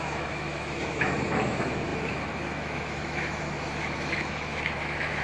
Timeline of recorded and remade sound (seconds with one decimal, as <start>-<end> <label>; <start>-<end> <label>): 0.0-5.2 remade